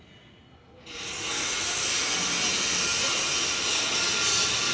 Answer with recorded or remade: recorded